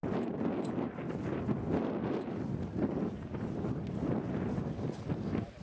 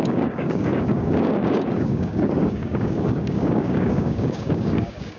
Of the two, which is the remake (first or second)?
second